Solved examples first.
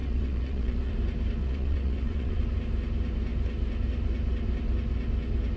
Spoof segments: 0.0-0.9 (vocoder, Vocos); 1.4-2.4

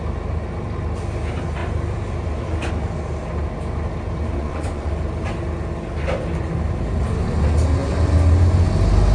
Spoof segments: 4.4-4.9 (vocoder, Vocos)

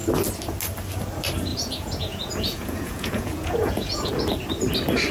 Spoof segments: 1.5-4.1 (vocoder, Vocos)

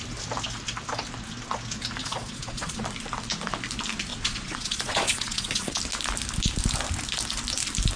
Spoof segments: 2.0-2.8 (vocoder, Vocos); 4.1-5.8

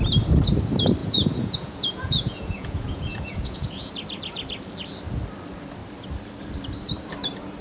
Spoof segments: 1.0-3.9 (vocoder, Vocos)

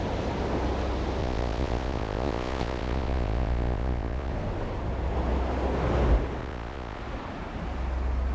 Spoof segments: 1.2-4.3 (vocoder, Vocos); 6.4-7.0

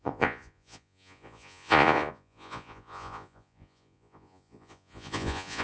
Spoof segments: 0.0-5.6 (vocoder, Vocos)